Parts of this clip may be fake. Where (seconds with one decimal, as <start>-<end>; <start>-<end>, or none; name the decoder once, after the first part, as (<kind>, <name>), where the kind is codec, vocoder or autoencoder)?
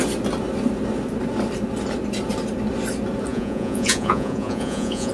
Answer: 3.3-5.1 (vocoder, Vocos)